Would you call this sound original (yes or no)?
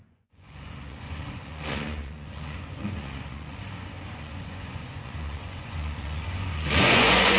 no